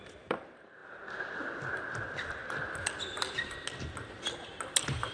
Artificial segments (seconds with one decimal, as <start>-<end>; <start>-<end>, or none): 0.0-2.4